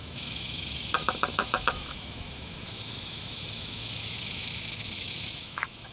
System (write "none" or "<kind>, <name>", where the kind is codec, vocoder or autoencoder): autoencoder, DAC-VAE